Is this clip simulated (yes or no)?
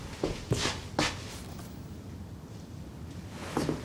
no